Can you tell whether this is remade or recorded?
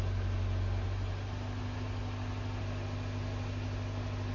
recorded